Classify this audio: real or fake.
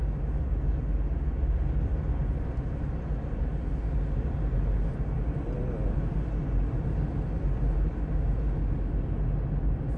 real